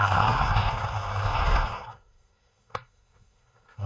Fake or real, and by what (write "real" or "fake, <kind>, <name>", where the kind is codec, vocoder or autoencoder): fake, codec, SNAC